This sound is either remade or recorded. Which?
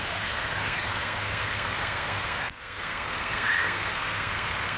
remade